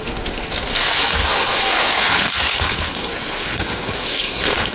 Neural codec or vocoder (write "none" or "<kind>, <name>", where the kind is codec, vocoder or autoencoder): codec, SNAC